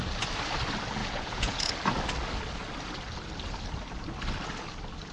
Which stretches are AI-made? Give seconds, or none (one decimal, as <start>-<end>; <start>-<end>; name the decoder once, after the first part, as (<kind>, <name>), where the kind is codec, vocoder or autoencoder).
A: 1.0-1.7 (vocoder, Vocos)